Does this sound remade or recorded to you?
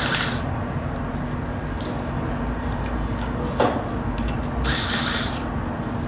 recorded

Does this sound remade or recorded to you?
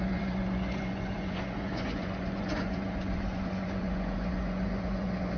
remade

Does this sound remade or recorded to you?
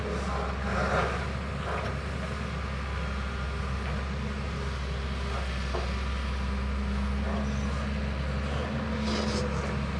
recorded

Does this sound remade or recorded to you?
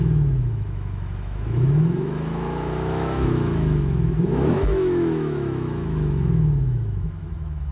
remade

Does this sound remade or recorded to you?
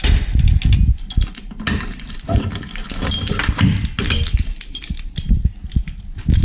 recorded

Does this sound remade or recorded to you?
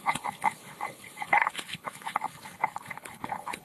remade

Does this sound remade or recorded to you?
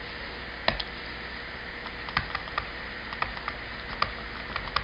recorded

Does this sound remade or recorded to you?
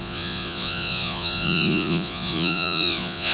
remade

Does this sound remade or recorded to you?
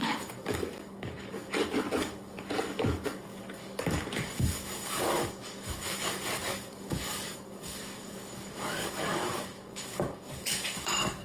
remade